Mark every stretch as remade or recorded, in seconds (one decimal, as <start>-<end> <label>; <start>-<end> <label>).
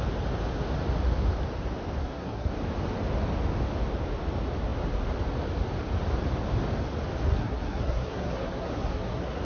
0.0-2.0 recorded; 2.0-2.5 remade; 2.5-7.3 recorded; 7.3-9.4 remade